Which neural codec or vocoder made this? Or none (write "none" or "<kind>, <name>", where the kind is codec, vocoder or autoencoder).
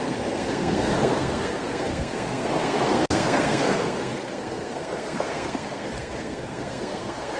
codec, SNAC